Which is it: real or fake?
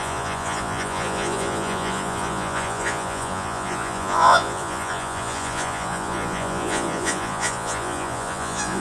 fake